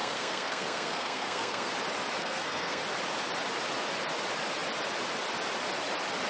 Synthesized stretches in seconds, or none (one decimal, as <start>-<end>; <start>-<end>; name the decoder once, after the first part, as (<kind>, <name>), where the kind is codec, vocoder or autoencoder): 0.0-1.7 (codec, SNAC); 2.2-2.8